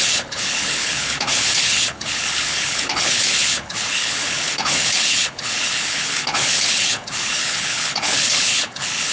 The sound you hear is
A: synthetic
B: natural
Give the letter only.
A